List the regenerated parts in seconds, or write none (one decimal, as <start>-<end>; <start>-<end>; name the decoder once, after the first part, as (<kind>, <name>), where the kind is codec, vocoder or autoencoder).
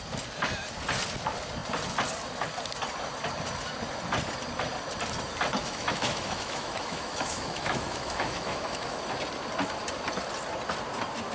5.6-9.0 (autoencoder, DAC-VAE)